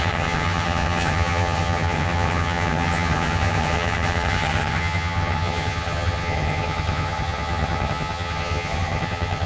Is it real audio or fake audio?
fake